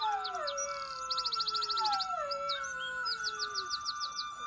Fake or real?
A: real